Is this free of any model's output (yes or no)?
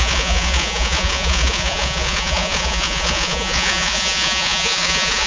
no